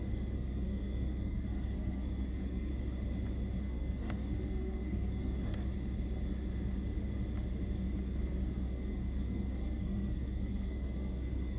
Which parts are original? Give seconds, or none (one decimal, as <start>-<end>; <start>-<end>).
2.7-3.6; 5.7-8.0